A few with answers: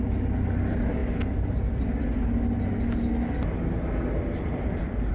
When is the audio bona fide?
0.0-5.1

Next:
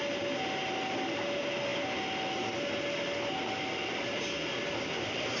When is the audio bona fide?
0.0-5.4

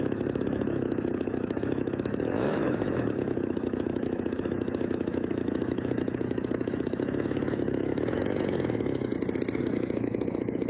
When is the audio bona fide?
9.1-9.6

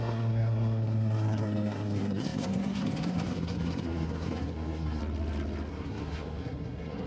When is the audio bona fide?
5.0-5.7

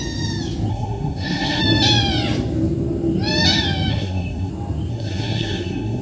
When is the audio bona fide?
0.0-0.7; 1.6-3.9; 4.5-4.9

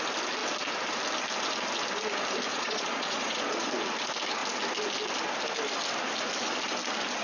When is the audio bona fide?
0.0-2.5; 3.7-7.2